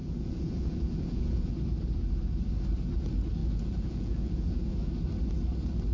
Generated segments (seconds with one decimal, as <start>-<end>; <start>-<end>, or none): 0.0-1.5; 3.4-4.9